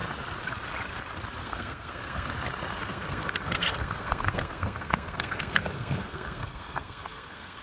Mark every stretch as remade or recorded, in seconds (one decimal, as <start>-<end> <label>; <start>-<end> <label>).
0.0-1.4 recorded; 1.4-2.3 remade; 2.3-2.9 recorded; 2.9-7.6 remade